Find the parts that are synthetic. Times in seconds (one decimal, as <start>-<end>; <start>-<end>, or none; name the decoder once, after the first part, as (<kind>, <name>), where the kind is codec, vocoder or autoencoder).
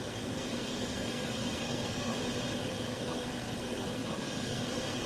0.0-2.1 (codec, SNAC); 2.8-5.1